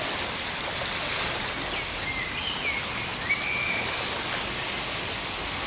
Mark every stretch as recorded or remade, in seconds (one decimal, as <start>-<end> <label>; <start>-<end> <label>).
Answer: 0.0-5.7 recorded